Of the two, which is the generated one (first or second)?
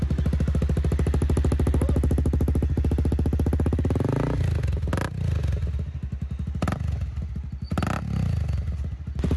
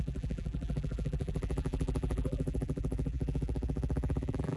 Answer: second